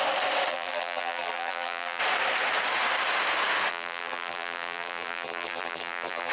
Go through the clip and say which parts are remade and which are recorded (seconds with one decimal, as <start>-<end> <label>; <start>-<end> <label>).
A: 0.0-0.5 recorded; 0.5-2.0 remade; 2.0-3.7 recorded; 3.7-6.3 remade